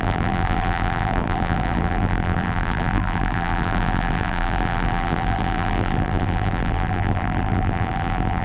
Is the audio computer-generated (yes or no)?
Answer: yes